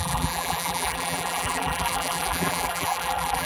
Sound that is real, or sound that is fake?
fake